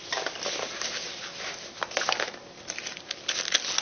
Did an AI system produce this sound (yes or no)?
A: no